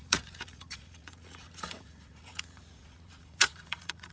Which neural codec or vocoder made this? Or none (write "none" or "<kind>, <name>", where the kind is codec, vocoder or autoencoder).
vocoder, Vocos